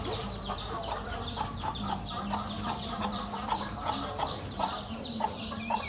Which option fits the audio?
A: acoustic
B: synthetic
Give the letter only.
B